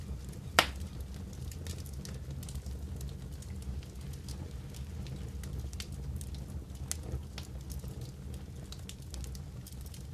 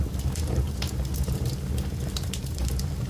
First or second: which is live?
first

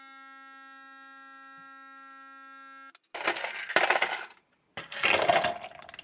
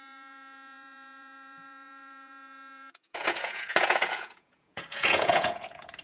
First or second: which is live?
first